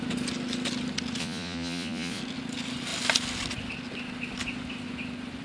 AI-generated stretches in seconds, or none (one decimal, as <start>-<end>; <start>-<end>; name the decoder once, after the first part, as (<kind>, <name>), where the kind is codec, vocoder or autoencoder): 1.2-2.2 (vocoder, Vocos)